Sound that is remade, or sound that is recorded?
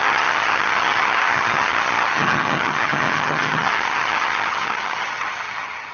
remade